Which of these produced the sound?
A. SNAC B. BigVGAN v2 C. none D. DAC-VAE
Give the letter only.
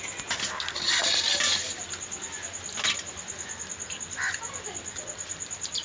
C